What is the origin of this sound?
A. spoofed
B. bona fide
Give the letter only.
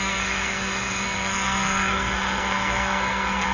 A